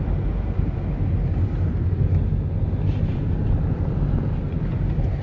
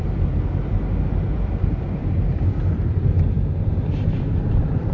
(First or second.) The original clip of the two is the first